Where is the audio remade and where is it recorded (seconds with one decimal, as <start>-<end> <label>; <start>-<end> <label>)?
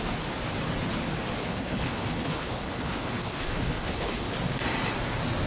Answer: 0.0-1.4 recorded; 1.4-4.3 remade; 4.3-5.5 recorded